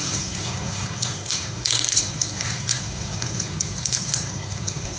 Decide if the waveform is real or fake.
fake